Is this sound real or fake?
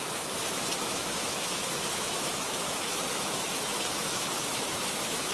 fake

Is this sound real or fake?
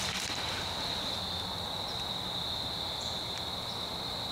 real